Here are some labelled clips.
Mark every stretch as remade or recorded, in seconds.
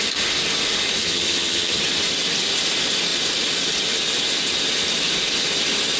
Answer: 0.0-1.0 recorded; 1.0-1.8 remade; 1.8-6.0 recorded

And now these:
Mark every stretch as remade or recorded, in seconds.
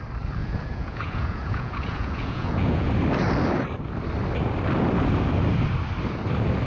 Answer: 0.0-0.4 recorded; 0.4-2.9 remade; 2.9-6.7 recorded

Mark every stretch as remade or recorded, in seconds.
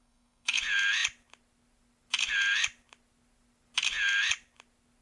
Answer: 0.0-0.6 remade; 0.6-5.0 recorded